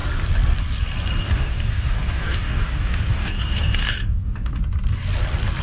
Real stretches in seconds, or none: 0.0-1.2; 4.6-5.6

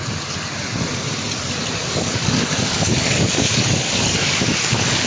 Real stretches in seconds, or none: 0.0-1.8

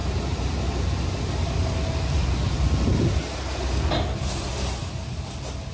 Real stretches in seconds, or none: 0.0-5.7

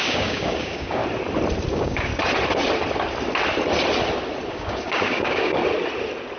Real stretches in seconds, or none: 1.0-1.7; 2.1-4.5; 5.6-6.4